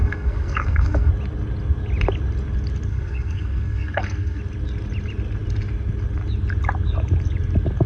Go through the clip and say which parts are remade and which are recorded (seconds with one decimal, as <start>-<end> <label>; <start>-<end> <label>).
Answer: 0.0-1.1 remade; 1.1-2.9 recorded; 2.9-4.4 remade; 4.4-7.9 recorded